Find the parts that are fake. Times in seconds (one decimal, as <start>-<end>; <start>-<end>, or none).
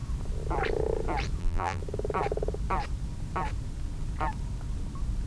1.4-1.8